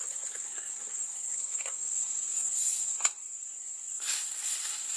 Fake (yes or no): yes